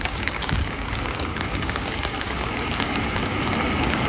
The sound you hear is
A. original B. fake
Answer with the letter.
B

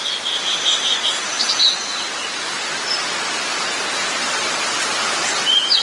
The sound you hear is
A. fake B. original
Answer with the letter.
B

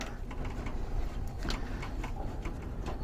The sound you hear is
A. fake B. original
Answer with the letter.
B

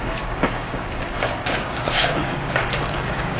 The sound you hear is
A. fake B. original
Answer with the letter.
A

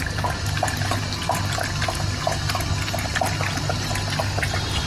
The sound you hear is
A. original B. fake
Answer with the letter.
A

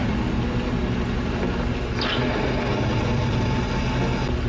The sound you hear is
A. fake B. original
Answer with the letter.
B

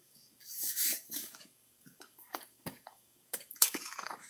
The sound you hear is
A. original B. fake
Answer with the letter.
B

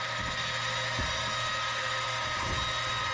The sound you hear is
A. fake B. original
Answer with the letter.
B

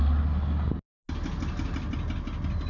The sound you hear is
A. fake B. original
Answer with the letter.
B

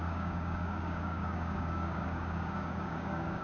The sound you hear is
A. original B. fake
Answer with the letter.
B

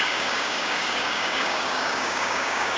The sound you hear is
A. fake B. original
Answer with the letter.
A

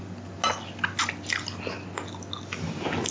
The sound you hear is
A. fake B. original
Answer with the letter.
B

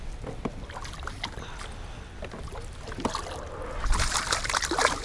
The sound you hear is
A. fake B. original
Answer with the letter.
B